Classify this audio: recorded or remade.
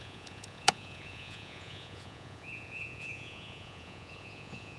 remade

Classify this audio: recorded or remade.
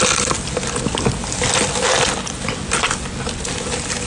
recorded